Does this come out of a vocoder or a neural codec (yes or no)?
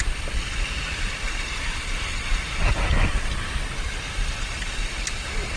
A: no